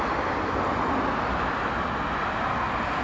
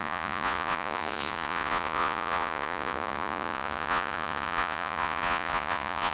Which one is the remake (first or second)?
second